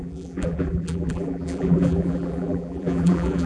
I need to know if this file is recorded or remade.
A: remade